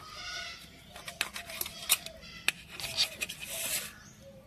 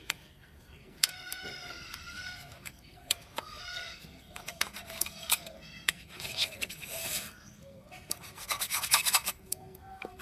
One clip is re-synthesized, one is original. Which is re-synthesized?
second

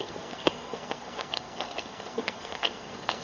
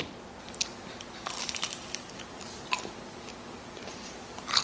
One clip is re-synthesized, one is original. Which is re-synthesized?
first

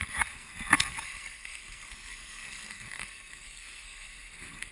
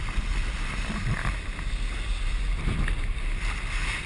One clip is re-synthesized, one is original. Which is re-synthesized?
first